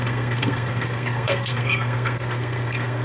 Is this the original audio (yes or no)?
no